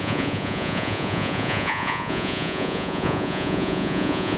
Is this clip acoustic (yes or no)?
no